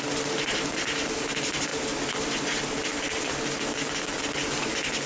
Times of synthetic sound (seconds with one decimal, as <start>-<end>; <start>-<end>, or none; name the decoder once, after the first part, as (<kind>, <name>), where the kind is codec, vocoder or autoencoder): none

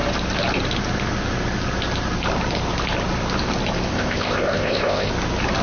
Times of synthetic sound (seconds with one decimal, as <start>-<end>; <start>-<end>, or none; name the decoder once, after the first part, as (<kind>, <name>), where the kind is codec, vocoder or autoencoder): 3.9-5.1 (codec, ZipCodec)

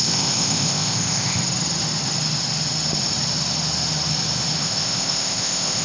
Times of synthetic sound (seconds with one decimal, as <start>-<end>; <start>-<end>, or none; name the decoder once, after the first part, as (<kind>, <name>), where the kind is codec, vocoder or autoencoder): 0.0-1.4 (codec, ZipCodec); 4.6-5.8

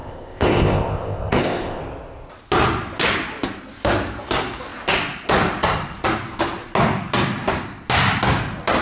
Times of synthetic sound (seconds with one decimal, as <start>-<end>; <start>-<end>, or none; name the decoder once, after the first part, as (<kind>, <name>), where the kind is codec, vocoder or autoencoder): 0.0-1.8 (codec, ZipCodec)

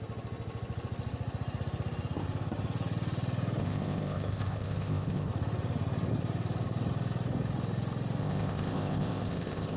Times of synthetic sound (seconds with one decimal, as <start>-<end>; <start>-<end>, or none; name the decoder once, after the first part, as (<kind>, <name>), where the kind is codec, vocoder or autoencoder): 3.6-5.3 (codec, ZipCodec); 8.2-9.8

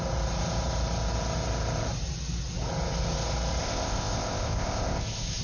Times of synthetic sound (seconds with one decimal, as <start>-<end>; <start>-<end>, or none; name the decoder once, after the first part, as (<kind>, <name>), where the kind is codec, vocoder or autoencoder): 3.6-5.4 (codec, ZipCodec)

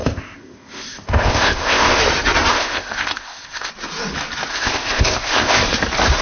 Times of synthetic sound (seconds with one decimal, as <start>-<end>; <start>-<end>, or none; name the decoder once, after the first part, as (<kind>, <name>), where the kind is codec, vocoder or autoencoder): 0.0-2.0 (codec, ZipCodec); 2.5-3.7; 4.5-5.6